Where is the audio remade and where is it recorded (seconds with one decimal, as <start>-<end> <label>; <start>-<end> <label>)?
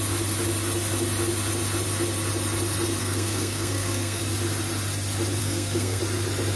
0.0-3.0 recorded; 3.0-4.2 remade; 4.2-5.4 recorded; 5.4-6.0 remade; 6.0-6.6 recorded